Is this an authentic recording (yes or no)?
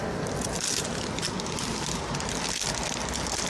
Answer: yes